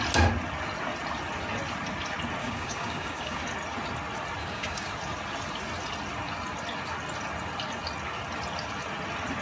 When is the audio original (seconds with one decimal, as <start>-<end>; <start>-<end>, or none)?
0.0-2.4; 3.4-4.4; 4.9-9.4